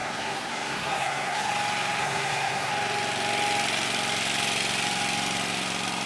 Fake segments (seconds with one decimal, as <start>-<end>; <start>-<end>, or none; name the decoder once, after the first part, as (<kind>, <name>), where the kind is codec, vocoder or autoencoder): 0.0-1.5 (codec, SNAC); 2.0-2.7